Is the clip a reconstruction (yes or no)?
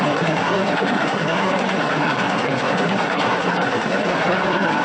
yes